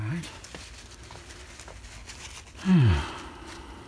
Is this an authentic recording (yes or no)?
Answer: yes